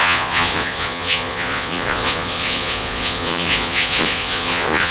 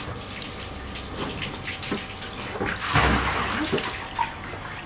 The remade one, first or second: first